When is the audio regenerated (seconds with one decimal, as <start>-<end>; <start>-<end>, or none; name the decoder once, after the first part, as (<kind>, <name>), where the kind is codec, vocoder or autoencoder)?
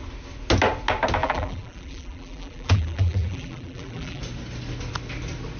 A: 1.2-4.2 (vocoder, BigVGAN v2)